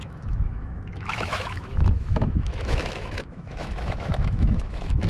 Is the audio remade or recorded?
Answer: remade